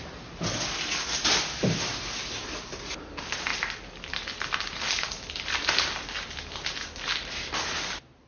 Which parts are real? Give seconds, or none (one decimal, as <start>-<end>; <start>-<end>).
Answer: 0.0-8.3